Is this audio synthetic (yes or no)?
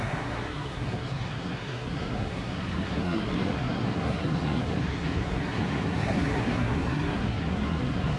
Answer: yes